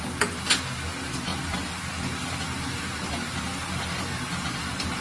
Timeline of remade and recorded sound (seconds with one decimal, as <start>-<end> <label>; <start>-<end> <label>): 0.0-5.0 recorded